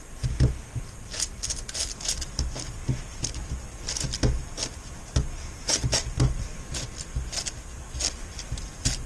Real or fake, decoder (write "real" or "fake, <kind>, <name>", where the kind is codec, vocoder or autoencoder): real